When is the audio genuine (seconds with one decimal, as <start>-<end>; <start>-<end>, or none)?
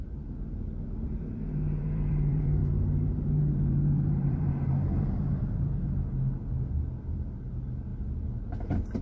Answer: 6.1-7.0; 7.9-9.0